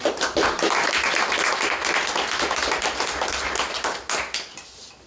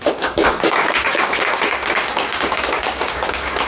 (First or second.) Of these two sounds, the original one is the first